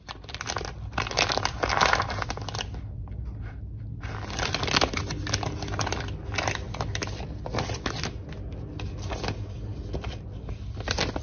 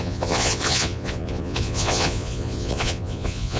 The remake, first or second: second